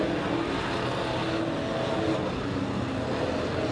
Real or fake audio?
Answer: real